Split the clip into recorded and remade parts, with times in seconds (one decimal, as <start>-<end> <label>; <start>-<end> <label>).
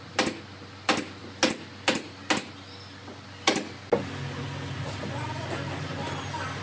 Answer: 0.0-6.6 recorded